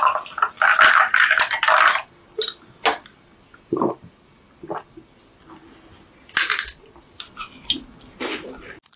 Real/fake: real